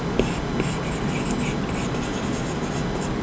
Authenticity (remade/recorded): recorded